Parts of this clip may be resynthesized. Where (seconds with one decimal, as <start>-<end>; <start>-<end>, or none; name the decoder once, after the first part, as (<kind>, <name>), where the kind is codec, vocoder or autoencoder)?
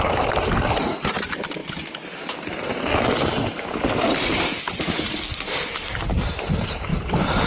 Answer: 6.9-7.5 (vocoder, BigVGAN v2)